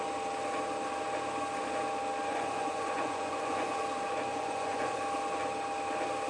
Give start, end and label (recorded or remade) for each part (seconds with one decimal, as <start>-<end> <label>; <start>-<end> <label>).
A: 0.0-2.3 recorded; 2.3-3.8 remade; 3.8-4.3 recorded; 4.3-5.0 remade; 5.0-6.3 recorded